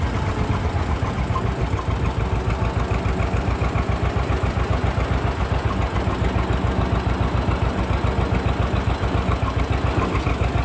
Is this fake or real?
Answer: real